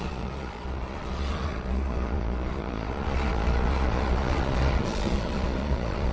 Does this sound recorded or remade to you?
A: remade